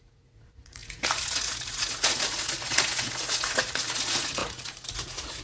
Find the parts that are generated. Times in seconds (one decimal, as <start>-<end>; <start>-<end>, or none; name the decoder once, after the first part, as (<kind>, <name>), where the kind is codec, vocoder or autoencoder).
0.0-5.4 (vocoder, Vocos)